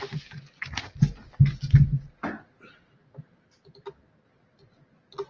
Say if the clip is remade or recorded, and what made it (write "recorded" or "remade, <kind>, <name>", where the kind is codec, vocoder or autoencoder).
recorded